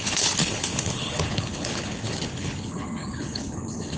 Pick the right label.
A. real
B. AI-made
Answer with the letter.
B